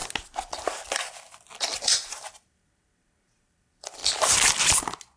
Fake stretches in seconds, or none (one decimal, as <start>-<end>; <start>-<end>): 1.5-4.0